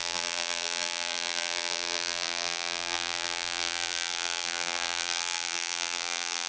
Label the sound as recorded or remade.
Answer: remade